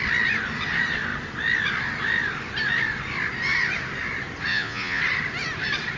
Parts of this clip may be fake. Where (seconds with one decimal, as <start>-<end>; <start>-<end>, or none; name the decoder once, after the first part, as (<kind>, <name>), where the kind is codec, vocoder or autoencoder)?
4.5-5.0 (vocoder, Vocos)